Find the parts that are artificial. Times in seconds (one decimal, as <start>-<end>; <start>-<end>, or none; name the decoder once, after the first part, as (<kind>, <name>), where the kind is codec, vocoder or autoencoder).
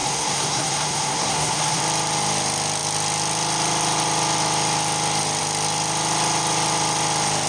0.0-1.8 (codec, SNAC)